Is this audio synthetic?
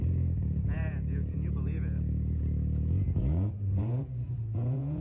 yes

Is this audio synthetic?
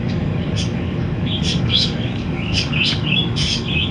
yes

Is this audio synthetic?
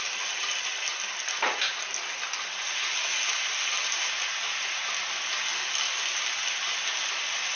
no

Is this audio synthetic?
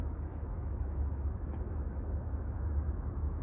yes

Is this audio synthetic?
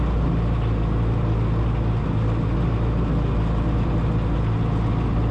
no